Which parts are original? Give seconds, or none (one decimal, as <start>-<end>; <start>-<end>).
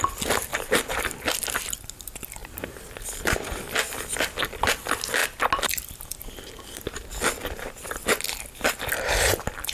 0.0-0.5; 1.1-2.4; 3.6-9.7